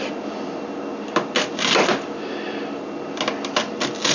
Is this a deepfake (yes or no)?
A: no